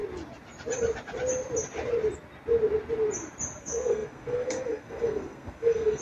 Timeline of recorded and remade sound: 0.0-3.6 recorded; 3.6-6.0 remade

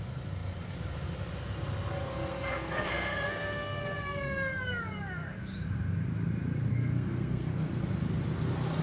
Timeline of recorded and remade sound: 0.0-2.0 recorded; 2.0-4.6 remade; 4.6-6.7 recorded; 6.7-7.7 remade; 7.7-8.8 recorded

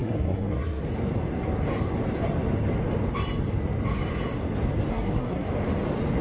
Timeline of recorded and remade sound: 0.0-0.8 remade; 0.8-4.9 recorded; 4.9-5.5 remade; 5.5-6.2 recorded